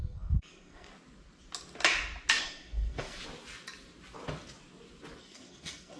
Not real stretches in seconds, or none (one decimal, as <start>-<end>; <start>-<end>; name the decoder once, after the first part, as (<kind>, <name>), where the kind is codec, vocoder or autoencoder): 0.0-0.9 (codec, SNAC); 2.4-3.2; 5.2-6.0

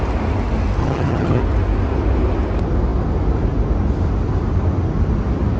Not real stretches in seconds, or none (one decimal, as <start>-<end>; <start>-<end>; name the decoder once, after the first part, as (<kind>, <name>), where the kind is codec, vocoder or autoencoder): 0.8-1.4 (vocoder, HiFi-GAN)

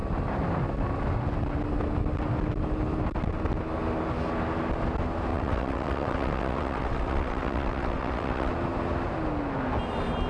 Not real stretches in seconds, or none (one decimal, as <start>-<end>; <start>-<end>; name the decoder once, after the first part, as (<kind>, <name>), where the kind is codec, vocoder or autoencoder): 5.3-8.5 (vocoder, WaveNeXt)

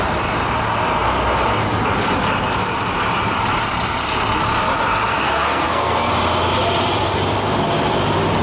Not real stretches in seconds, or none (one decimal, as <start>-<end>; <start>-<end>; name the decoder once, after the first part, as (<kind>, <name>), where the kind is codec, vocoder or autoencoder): 5.1-6.1 (codec, SNAC)

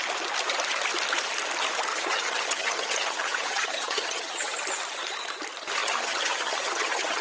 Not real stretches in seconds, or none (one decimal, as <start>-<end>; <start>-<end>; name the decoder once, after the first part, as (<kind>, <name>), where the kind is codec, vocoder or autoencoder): 1.9-4.6 (vocoder, HiFi-GAN); 5.8-7.2

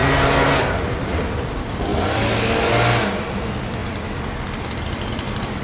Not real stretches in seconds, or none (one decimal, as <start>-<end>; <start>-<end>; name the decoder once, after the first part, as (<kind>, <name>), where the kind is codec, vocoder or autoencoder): 0.0-1.9 (vocoder, BigVGAN v2); 3.4-5.6